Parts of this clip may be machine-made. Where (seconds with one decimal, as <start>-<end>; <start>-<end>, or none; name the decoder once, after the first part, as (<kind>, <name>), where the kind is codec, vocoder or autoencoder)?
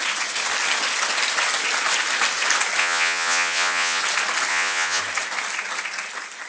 2.8-4.0 (vocoder, Vocos); 4.5-5.0